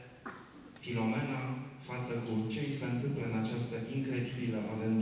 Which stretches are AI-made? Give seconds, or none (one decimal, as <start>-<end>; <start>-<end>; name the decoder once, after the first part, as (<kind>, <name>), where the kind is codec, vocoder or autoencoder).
none